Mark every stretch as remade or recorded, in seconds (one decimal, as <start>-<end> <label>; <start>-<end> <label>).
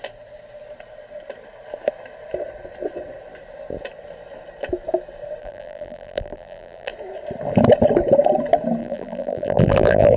0.0-5.4 recorded; 5.4-6.9 remade; 6.9-8.8 recorded; 8.8-10.2 remade